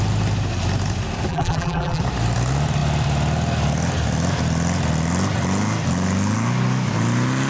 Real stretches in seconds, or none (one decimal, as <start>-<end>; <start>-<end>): 0.0-1.3; 2.0-7.5